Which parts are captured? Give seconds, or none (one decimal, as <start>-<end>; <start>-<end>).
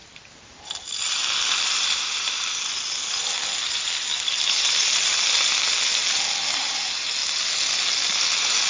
0.0-8.7